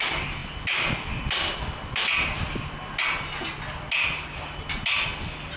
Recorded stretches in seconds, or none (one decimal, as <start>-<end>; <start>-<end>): 0.0-5.6

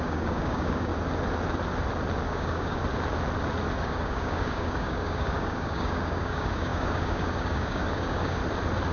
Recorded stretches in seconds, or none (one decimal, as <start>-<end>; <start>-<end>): 0.9-2.2; 2.8-3.8; 8.4-8.9

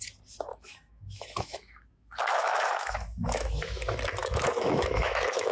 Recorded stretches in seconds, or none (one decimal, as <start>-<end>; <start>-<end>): 0.0-0.5; 3.8-4.2

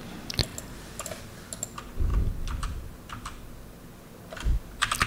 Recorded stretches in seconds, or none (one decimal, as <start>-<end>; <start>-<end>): 0.0-5.1

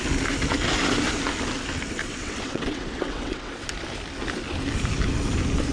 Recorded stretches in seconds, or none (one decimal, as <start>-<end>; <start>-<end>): 0.0-2.0; 3.5-5.7

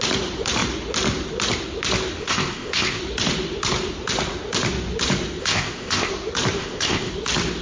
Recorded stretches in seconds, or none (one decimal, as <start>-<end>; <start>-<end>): 0.0-2.2; 3.0-5.4; 6.1-6.6; 7.1-7.6

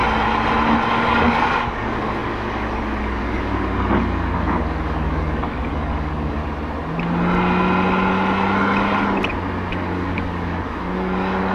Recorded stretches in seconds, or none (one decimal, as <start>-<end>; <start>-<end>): 0.0-0.9; 6.4-9.7